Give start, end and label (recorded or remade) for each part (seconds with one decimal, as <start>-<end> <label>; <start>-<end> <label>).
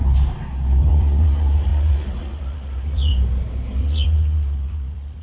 0.0-0.8 recorded; 0.8-3.1 remade; 3.1-3.8 recorded; 3.8-5.2 remade